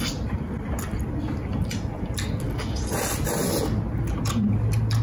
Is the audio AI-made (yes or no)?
no